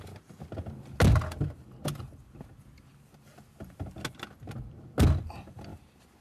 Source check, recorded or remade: recorded